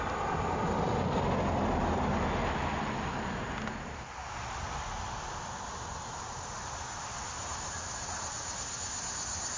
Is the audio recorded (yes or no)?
yes